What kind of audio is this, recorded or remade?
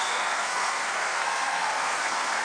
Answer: remade